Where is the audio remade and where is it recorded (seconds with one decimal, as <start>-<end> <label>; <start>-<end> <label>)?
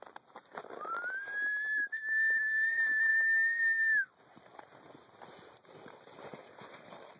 0.0-3.1 remade; 3.1-4.1 recorded; 4.1-7.2 remade